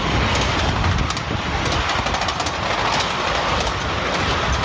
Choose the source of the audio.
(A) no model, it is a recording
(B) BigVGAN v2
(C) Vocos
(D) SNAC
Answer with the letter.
A